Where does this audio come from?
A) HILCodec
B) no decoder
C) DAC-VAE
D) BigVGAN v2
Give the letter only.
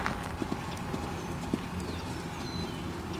B